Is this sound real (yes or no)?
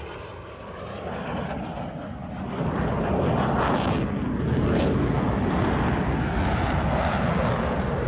yes